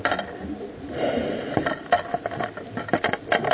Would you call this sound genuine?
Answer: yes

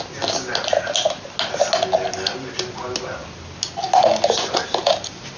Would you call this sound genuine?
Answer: yes